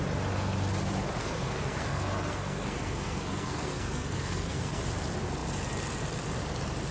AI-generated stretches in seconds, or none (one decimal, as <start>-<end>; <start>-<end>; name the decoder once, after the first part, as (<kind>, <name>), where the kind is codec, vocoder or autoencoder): 1.2-4.8 (codec, SNAC)